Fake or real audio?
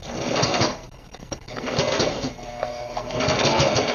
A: fake